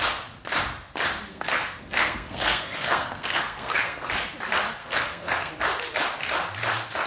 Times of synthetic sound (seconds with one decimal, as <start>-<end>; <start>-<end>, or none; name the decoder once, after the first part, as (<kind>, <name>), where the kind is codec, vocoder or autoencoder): 1.3-4.1 (codec, SNAC); 4.8-5.5